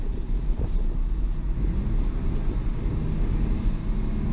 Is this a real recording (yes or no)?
yes